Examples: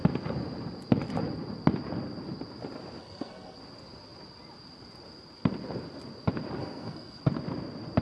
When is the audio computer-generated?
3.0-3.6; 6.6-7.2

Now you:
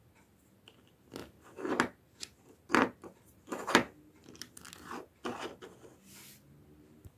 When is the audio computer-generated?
none

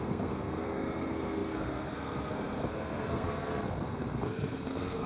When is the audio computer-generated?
0.0-5.1

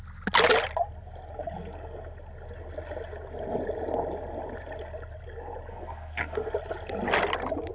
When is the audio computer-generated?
5.7-6.5